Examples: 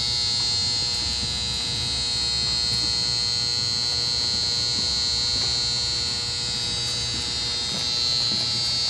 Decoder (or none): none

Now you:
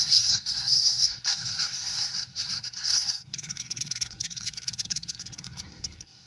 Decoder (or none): codec, SNAC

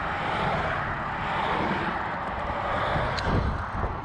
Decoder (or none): none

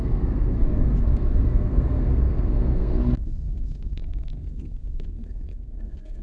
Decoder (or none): codec, SNAC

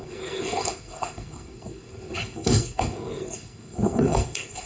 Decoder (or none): codec, SNAC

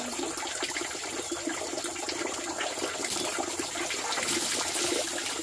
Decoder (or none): none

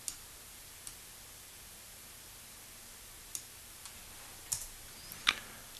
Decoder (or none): none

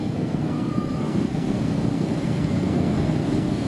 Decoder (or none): codec, SNAC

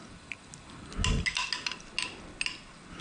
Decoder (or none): none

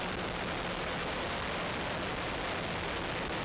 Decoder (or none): none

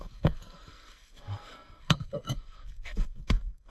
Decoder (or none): codec, SNAC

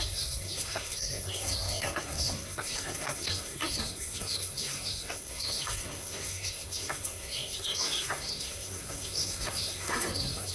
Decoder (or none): codec, SNAC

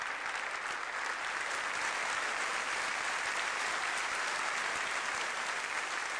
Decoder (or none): none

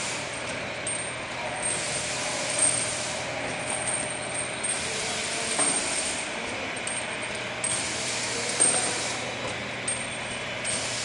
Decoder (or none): none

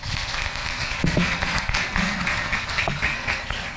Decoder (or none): codec, SNAC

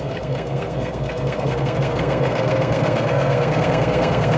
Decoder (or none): codec, SNAC